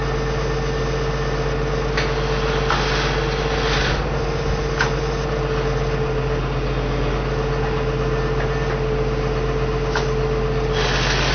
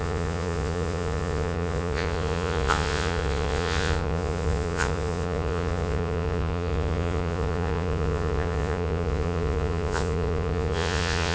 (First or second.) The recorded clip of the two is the first